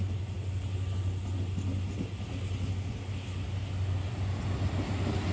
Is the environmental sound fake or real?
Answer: real